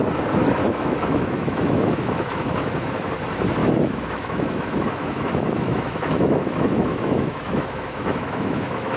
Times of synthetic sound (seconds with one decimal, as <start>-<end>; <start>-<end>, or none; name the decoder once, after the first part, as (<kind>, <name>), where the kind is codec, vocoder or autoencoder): 0.6-3.1 (autoencoder, DAC-VAE); 3.6-9.0